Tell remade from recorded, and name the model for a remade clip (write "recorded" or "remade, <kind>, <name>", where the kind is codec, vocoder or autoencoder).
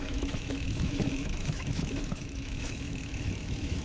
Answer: remade, autoencoder, DAC-VAE